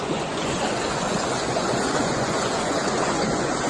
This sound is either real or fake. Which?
fake